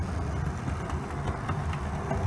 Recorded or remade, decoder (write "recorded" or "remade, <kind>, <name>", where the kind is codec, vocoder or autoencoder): recorded